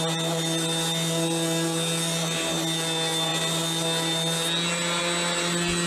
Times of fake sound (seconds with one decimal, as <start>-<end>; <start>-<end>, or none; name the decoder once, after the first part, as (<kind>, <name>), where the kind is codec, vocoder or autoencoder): none